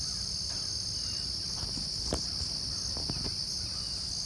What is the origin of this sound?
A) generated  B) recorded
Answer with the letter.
B